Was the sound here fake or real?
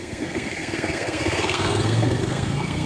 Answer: fake